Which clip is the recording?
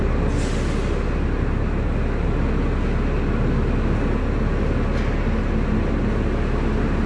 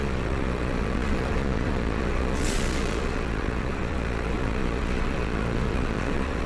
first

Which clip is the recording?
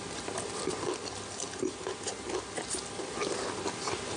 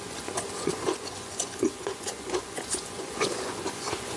first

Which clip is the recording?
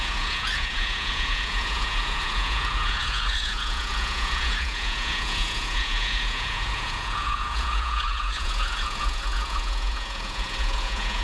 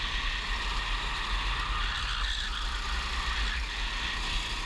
second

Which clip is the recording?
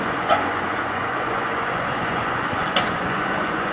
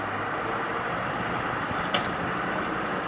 second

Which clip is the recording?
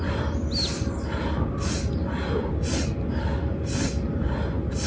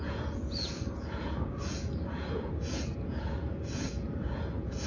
first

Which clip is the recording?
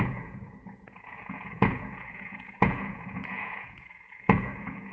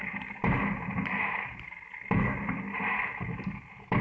second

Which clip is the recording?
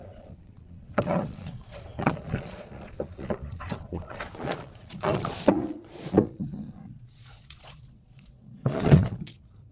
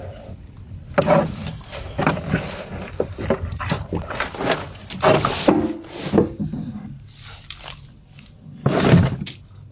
second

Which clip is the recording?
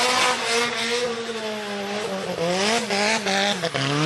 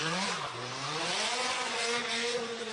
first